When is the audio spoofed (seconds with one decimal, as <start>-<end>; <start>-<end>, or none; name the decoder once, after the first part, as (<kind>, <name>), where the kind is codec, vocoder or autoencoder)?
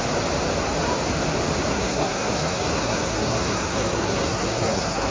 1.7-5.1 (codec, SNAC)